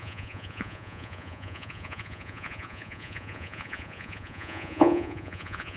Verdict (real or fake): fake